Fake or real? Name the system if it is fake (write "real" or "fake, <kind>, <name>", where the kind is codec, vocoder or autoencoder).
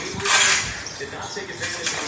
real